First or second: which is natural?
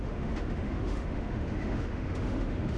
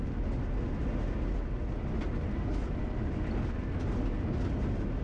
second